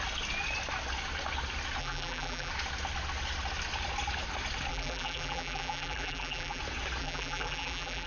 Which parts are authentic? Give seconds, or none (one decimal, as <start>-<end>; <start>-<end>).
0.0-1.8; 2.5-4.7; 6.6-7.0